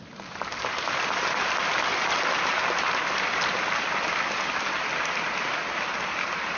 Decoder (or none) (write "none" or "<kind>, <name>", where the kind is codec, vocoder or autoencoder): none